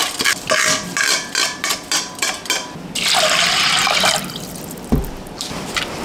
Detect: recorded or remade remade